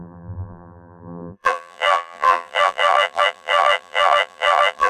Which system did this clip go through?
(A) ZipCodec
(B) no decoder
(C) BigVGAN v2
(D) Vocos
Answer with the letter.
C